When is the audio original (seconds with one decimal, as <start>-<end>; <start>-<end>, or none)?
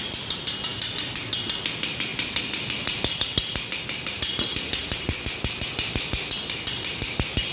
0.0-4.8; 5.6-7.5